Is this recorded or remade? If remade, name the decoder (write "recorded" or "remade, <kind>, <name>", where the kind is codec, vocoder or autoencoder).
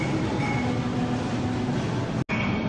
recorded